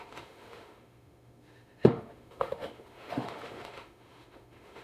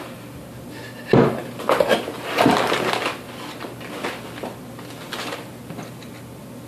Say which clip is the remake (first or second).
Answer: first